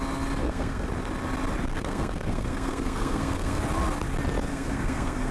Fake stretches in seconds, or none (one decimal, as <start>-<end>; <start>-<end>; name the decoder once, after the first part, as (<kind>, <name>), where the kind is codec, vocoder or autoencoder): 0.4-0.9 (codec, SNAC); 1.7-3.6; 4.5-5.3